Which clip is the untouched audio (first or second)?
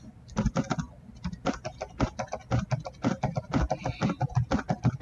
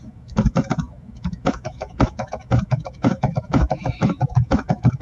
first